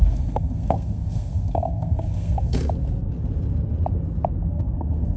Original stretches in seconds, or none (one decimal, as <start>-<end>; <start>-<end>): 2.6-4.5